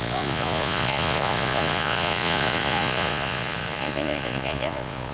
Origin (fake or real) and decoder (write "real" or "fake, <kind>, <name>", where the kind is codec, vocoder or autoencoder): fake, vocoder, Vocos